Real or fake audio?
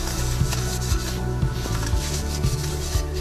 real